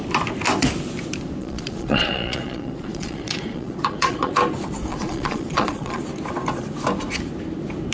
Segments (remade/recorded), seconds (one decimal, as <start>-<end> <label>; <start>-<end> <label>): 0.0-1.4 recorded; 1.4-4.3 remade; 4.3-4.9 recorded; 4.9-6.0 remade; 6.0-7.9 recorded